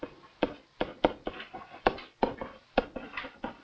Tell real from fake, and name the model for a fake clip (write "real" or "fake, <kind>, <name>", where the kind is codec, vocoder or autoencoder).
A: real